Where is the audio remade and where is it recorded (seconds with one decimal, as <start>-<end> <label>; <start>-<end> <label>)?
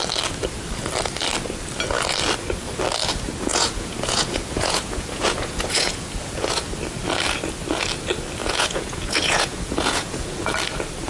0.0-3.5 recorded; 3.5-6.7 remade; 6.7-8.4 recorded; 8.4-10.5 remade; 10.5-11.1 recorded